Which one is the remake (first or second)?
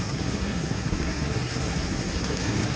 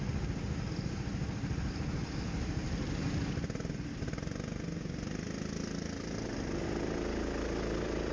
first